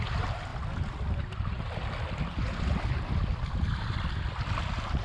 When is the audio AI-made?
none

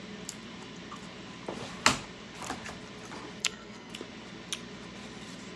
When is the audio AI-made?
3.4-3.9 (codec, SNAC)

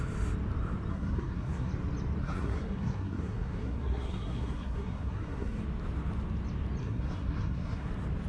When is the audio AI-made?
0.9-1.7 (codec, SNAC); 2.2-5.6; 6.8-7.9

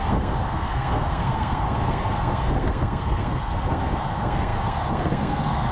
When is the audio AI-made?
0.0-5.7 (codec, SNAC)

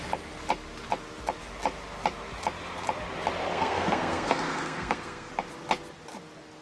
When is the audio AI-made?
3.5-5.3 (codec, SNAC)

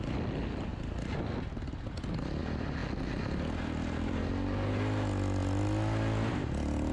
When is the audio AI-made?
none

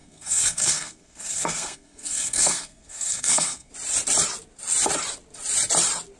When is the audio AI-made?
0.0-3.7 (codec, SNAC)

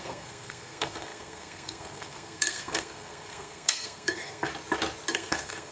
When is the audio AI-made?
0.0-4.5 (codec, SNAC); 5.1-5.7